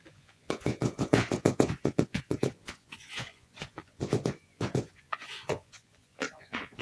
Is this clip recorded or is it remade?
remade